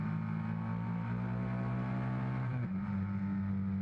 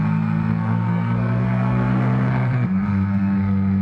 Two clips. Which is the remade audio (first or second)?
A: second